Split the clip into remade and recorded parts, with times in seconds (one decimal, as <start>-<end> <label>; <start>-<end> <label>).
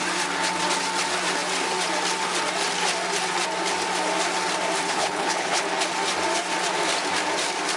0.0-4.9 recorded; 4.9-5.6 remade; 5.6-7.8 recorded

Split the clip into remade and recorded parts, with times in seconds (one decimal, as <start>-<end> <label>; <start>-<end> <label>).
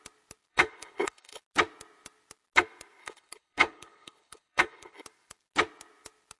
0.0-0.5 recorded; 0.5-1.4 remade; 1.4-3.0 recorded; 3.0-5.0 remade; 5.0-6.4 recorded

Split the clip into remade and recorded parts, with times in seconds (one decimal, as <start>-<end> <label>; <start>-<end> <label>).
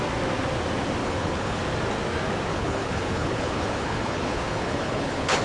0.0-1.0 recorded; 1.0-1.6 remade; 1.6-2.5 recorded; 2.5-5.4 remade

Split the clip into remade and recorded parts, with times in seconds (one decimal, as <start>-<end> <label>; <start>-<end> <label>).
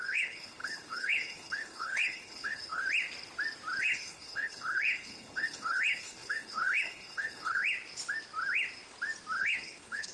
0.0-2.8 remade; 2.8-3.8 recorded; 3.8-7.6 remade; 7.6-9.4 recorded; 9.4-10.1 remade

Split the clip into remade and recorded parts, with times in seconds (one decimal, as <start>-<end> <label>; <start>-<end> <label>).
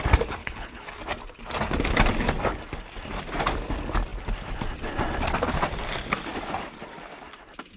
0.0-0.4 recorded; 0.4-0.9 remade; 0.9-7.8 recorded